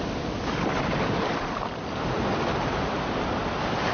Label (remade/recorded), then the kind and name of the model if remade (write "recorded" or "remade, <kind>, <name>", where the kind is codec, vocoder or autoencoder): recorded